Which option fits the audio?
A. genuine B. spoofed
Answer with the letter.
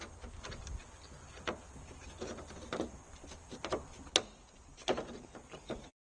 A